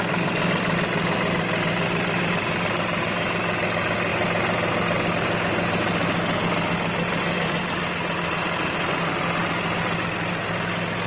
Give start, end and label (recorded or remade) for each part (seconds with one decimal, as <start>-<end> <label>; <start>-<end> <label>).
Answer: 0.0-11.1 recorded